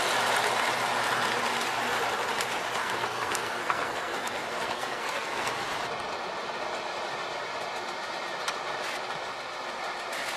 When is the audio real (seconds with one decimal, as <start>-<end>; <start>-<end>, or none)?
0.0-2.8; 5.5-10.4